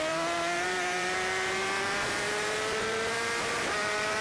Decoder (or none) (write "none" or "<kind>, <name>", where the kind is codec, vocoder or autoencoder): vocoder, BigVGAN v2